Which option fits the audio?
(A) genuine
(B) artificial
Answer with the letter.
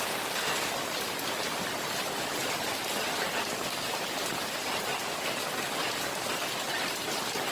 A